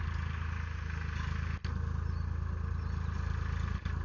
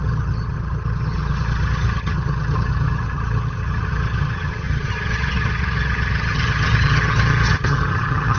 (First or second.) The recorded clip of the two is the first